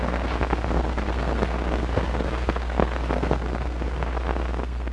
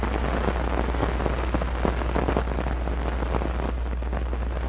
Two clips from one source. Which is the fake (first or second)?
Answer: first